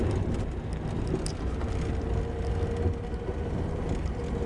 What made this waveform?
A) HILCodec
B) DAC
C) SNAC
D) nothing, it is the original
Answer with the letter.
D